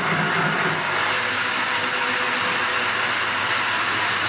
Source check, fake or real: real